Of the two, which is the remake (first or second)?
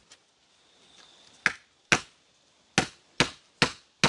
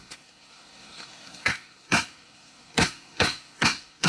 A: second